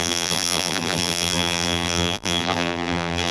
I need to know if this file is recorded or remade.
remade